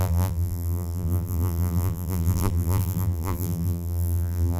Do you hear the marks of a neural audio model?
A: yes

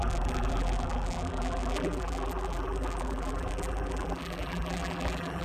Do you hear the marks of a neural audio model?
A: yes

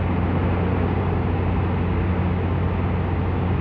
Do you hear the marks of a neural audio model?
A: no